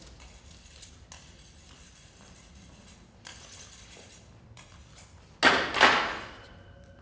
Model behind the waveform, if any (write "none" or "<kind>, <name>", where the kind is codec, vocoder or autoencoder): none